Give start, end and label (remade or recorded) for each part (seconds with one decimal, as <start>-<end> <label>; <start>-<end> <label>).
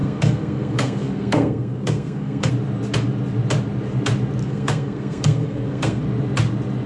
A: 0.0-2.5 remade; 2.5-4.4 recorded; 4.4-6.0 remade; 6.0-6.9 recorded